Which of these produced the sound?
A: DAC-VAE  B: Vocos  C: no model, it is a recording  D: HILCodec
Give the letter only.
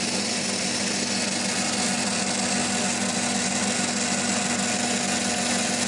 C